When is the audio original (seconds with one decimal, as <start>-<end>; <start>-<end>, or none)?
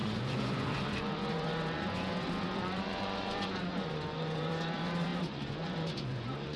none